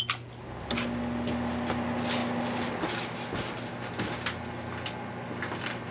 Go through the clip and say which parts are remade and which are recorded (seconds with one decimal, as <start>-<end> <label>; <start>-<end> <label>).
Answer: 0.0-5.9 recorded